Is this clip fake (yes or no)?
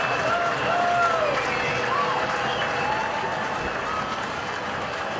no